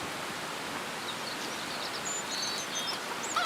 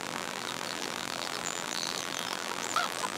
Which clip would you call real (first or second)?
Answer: first